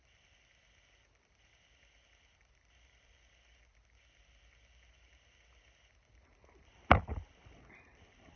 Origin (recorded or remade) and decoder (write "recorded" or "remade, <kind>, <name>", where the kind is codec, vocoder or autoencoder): recorded